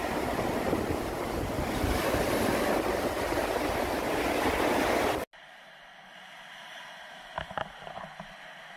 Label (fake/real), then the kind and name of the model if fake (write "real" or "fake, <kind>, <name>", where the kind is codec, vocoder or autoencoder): real